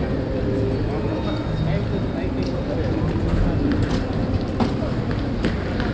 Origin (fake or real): real